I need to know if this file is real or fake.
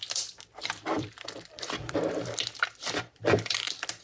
fake